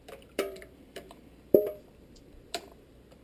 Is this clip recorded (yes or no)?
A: no